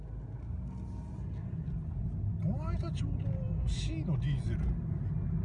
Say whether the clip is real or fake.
real